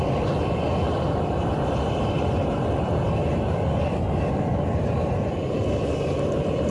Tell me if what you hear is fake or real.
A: real